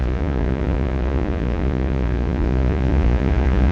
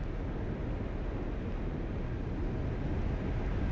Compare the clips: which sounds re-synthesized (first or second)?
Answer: first